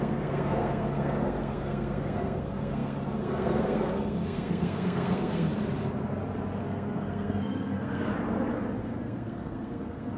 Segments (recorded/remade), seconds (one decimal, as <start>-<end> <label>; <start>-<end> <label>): 0.0-5.5 remade; 5.5-6.6 recorded; 6.6-8.1 remade; 8.1-8.8 recorded; 8.8-10.2 remade